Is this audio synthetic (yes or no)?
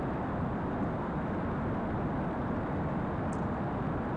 no